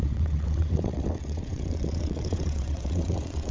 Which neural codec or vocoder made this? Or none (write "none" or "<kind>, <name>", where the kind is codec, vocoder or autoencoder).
vocoder, WaveNeXt